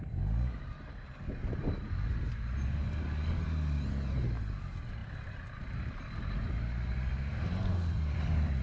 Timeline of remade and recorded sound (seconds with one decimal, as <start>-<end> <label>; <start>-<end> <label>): 0.0-8.6 recorded